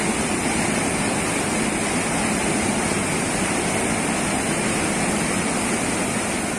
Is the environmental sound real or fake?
real